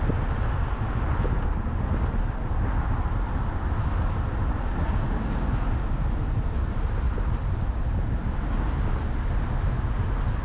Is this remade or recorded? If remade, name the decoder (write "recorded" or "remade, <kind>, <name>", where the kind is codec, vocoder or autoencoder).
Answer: recorded